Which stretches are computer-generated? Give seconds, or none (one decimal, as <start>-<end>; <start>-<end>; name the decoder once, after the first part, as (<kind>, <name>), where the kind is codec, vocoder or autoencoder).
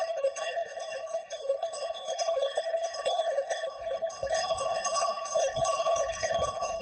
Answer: 0.0-6.8 (codec, HILCodec)